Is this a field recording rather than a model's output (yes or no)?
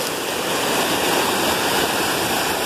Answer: yes